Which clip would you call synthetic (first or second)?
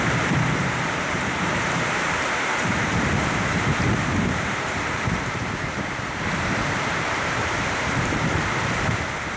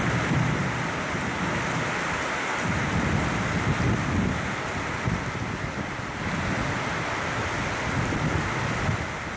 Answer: first